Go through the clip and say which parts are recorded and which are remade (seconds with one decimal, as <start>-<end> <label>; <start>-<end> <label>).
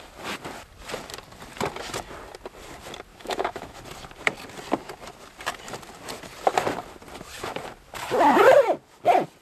0.0-3.1 recorded; 3.1-3.8 remade; 3.8-9.4 recorded